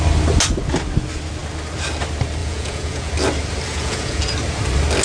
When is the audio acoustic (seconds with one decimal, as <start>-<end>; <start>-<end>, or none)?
0.0-2.4; 3.1-3.7; 4.2-5.0